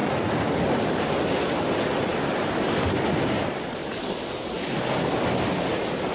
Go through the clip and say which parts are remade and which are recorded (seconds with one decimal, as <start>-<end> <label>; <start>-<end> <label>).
0.0-6.1 recorded